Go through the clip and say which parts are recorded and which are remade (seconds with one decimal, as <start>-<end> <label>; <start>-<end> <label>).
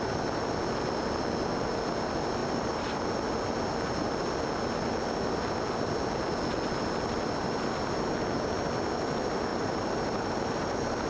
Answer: 0.0-2.4 recorded; 2.4-3.0 remade; 3.0-9.5 recorded; 9.5-11.1 remade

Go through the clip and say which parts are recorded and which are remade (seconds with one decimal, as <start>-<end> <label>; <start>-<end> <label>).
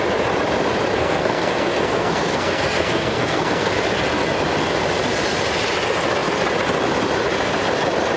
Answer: 0.0-1.0 recorded; 1.0-3.7 remade; 3.7-8.2 recorded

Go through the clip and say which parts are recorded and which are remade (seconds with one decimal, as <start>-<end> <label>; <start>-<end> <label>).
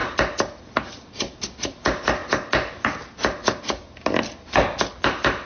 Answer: 0.0-5.5 recorded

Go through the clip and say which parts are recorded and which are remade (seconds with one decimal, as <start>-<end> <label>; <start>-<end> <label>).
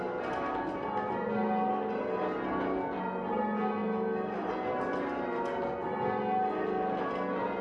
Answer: 0.0-7.6 recorded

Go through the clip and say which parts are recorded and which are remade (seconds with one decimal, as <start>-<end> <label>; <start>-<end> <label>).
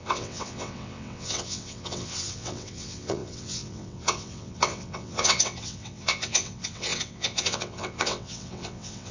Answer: 0.0-9.1 remade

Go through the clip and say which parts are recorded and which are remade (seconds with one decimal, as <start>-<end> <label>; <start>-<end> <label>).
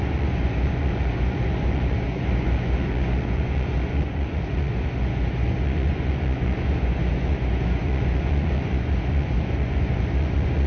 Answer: 0.0-10.7 remade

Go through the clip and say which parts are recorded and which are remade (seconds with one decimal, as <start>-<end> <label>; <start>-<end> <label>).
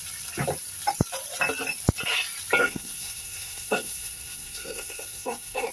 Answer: 0.0-2.6 recorded; 2.6-5.7 remade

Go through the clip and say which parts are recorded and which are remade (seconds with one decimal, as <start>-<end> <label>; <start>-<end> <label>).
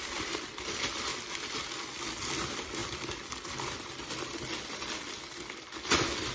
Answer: 0.0-1.1 remade; 1.1-2.3 recorded; 2.3-6.3 remade